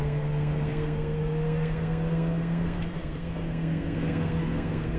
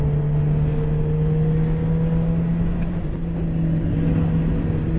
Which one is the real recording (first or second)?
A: second